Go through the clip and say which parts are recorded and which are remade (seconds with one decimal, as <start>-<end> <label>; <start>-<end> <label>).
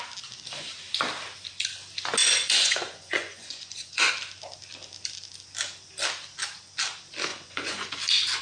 0.0-2.2 recorded; 2.2-4.1 remade; 4.1-7.3 recorded; 7.3-7.9 remade; 7.9-8.4 recorded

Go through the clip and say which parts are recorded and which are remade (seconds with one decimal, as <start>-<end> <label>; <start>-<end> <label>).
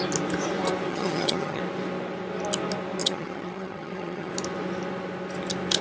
0.0-0.9 recorded; 0.9-1.6 remade; 1.6-3.0 recorded; 3.0-4.3 remade; 4.3-5.8 recorded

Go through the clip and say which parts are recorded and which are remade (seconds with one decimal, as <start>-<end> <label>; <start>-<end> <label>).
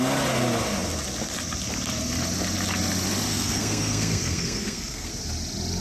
0.0-3.3 recorded; 3.3-5.1 remade; 5.1-5.8 recorded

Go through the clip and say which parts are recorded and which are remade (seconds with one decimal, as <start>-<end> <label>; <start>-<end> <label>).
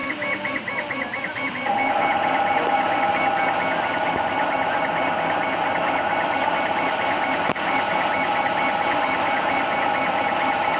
0.0-10.8 recorded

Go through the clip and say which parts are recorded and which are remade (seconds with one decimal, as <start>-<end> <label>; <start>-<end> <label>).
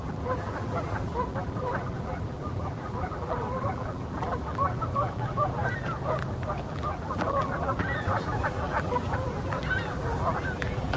0.0-5.6 remade; 5.6-6.7 recorded; 6.7-11.0 remade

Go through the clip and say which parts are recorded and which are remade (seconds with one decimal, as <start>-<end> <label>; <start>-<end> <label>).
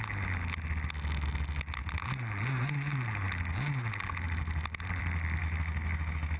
0.0-5.4 recorded; 5.4-6.4 remade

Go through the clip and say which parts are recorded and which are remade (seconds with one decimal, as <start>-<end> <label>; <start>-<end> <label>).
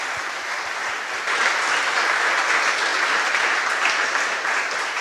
0.0-2.9 recorded; 2.9-4.5 remade; 4.5-5.0 recorded